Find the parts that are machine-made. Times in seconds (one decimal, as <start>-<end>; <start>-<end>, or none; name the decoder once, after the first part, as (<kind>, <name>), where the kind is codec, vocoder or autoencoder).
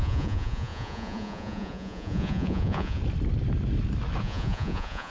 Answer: 0.0-3.0 (vocoder, Vocos); 4.2-5.1